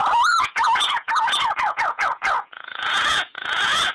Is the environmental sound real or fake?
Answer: fake